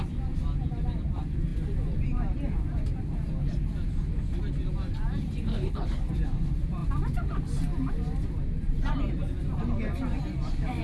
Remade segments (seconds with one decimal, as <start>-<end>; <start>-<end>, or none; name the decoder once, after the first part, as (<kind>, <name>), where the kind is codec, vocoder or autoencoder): 5.5-6.1 (codec, HILCodec)